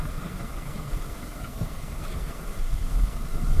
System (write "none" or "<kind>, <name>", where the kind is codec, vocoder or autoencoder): codec, SNAC